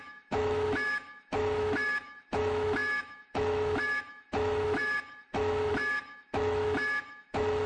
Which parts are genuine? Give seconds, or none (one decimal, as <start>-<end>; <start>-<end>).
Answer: none